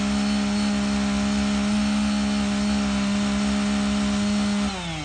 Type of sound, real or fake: real